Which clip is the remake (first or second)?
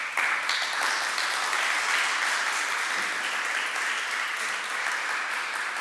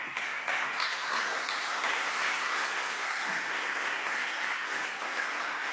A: second